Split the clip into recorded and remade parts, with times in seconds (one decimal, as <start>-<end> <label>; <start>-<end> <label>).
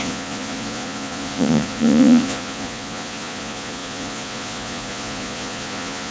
0.0-6.1 remade